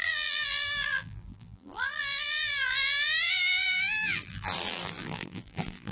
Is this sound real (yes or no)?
no